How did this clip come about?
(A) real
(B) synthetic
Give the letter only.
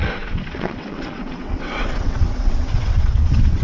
B